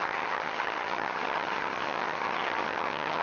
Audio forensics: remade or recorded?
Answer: remade